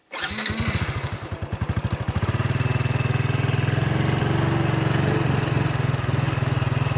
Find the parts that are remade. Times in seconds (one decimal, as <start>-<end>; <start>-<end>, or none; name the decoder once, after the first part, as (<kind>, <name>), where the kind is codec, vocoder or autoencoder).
none